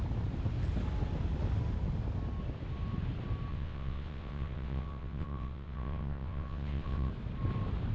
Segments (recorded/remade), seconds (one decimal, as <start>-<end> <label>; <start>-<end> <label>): 0.0-3.5 recorded; 3.5-7.1 remade; 7.1-7.9 recorded